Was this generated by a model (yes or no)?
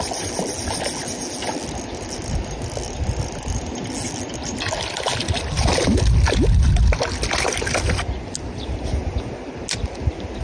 no